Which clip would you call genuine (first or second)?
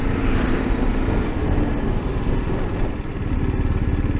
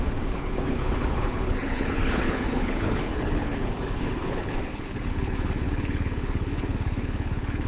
first